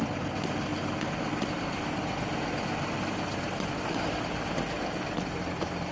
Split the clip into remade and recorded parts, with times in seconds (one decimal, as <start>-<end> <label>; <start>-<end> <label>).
0.0-5.9 recorded